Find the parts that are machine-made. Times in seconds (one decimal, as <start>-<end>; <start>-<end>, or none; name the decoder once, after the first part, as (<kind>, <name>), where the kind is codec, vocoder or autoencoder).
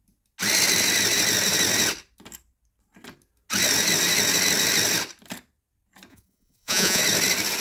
6.1-7.0 (vocoder, Vocos)